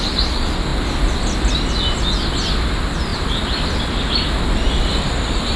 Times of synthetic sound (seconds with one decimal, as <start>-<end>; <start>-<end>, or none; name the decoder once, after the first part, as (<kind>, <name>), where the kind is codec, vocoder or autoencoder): none